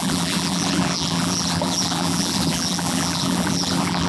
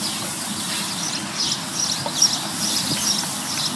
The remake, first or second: first